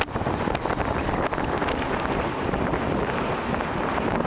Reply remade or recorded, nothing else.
recorded